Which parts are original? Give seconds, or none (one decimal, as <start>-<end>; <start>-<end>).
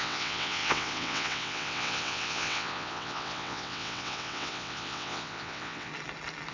5.9-6.5